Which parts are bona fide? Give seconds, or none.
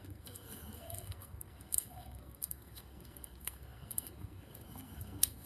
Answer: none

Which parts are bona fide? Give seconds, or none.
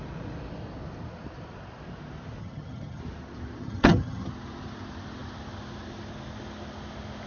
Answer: 0.0-2.4; 3.0-3.6; 4.3-7.3